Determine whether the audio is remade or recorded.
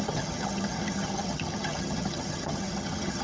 remade